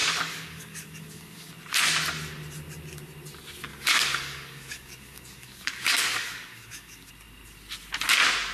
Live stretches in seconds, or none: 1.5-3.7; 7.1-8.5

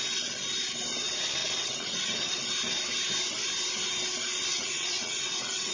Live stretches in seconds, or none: 0.0-1.4; 2.4-4.5

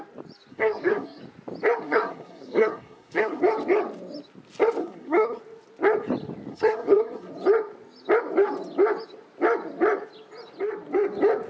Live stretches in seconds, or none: 0.0-0.5; 1.2-1.8; 3.4-4.8; 5.4-6.5; 7.3-11.5

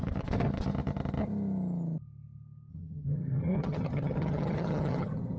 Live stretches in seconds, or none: 0.0-2.7

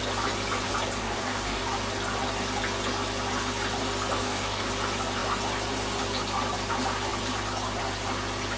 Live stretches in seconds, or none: 0.0-1.0; 1.6-4.2; 4.7-8.6